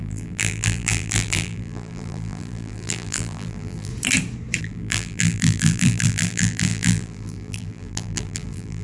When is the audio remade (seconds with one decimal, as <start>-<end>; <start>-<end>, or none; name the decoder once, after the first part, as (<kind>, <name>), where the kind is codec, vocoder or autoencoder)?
0.0-3.9 (vocoder, BigVGAN v2); 4.6-8.8

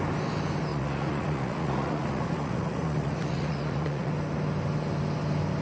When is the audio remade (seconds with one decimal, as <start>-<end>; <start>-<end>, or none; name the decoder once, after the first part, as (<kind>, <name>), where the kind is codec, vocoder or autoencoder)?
0.7-4.1 (vocoder, Vocos)

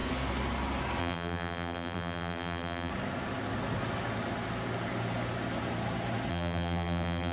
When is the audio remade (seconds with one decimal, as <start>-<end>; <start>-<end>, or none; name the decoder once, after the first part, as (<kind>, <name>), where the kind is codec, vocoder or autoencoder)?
1.0-2.9 (vocoder, BigVGAN v2); 6.3-7.3

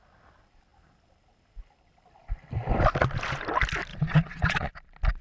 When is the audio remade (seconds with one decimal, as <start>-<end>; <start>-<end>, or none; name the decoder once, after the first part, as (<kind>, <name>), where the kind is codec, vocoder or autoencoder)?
3.9-4.7 (vocoder, Vocos)

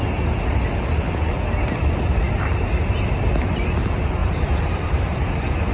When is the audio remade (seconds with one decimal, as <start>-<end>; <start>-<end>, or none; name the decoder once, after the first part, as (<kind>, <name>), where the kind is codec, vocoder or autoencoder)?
4.2-5.0 (vocoder, BigVGAN v2)

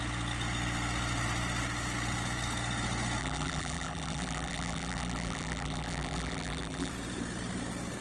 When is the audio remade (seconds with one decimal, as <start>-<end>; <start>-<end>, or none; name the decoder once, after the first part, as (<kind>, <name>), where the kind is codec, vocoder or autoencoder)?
3.2-6.9 (vocoder, BigVGAN v2)

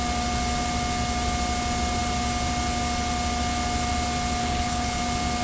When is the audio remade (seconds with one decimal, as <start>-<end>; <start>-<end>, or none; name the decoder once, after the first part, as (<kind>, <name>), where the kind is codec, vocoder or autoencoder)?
4.4-5.0 (codec, HILCodec)

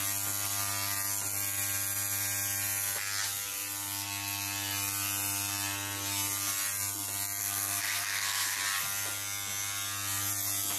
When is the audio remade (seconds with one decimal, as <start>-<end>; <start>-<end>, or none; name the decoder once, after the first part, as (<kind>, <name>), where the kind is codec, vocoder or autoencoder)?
7.4-8.6 (codec, SNAC)